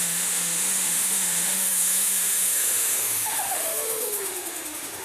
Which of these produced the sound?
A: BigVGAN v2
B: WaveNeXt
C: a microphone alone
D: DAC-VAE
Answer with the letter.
D